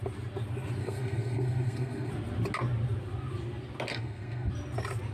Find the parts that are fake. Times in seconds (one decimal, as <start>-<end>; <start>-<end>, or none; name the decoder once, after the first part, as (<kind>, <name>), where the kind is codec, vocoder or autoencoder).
0.8-2.1 (codec, SNAC); 3.9-4.5